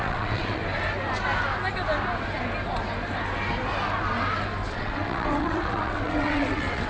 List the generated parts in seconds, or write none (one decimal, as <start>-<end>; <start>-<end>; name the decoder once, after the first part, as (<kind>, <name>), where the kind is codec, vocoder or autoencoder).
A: 0.0-0.6 (vocoder, WaveNeXt); 4.7-6.9